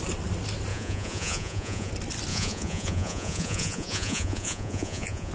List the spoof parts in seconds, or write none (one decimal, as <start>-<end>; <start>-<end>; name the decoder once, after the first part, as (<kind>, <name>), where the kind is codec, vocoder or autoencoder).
0.7-1.9 (vocoder, Vocos); 2.3-5.3

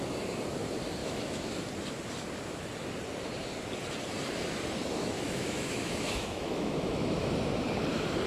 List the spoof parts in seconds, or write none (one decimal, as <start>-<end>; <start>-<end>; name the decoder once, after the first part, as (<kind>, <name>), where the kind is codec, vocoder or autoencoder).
1.0-1.5 (autoencoder, DAC-VAE); 4.9-7.3

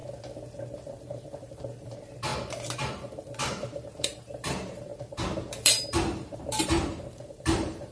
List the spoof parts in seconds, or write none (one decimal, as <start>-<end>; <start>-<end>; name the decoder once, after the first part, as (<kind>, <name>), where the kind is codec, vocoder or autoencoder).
0.6-2.3 (vocoder, BigVGAN v2); 2.9-4.9; 5.5-7.9

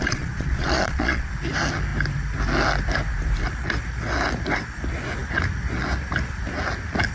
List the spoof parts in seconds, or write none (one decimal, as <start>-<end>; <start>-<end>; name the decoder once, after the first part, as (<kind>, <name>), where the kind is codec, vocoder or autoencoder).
0.0-1.3 (vocoder, Vocos)

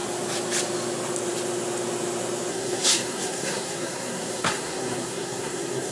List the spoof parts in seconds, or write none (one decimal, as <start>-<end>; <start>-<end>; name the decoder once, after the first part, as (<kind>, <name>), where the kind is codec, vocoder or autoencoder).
2.5-5.9 (codec, SNAC)

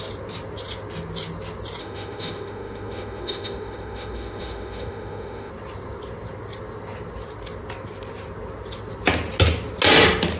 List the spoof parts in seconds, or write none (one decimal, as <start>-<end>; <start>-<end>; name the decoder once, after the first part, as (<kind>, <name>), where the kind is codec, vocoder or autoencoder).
1.8-5.5 (autoencoder, DAC-VAE)

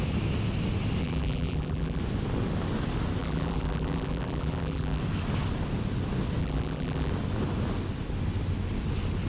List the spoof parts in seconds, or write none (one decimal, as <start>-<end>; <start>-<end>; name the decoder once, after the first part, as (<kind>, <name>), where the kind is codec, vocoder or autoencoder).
1.0-2.0 (vocoder, BigVGAN v2); 3.2-5.0; 6.4-7.1

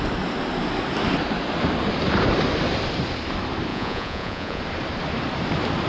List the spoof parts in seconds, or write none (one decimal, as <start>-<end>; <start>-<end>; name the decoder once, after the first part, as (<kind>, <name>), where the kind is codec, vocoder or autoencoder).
3.7-4.6 (vocoder, Vocos)